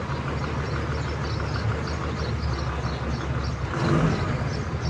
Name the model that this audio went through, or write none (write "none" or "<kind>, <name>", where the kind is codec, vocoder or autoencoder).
none